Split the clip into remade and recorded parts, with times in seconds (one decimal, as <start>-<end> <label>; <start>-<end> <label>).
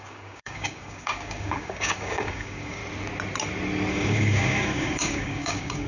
0.0-2.8 remade; 2.8-3.9 recorded; 3.9-5.9 remade